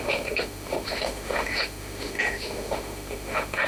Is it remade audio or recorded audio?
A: remade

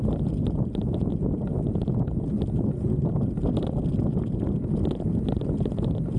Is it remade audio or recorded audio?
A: recorded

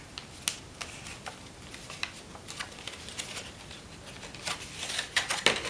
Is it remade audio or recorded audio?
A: recorded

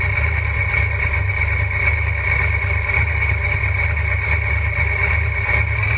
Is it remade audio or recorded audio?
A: recorded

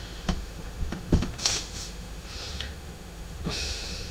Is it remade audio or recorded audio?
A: remade